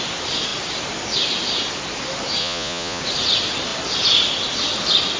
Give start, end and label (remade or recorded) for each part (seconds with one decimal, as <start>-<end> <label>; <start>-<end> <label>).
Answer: 0.0-2.4 recorded; 2.4-3.0 remade; 3.0-5.2 recorded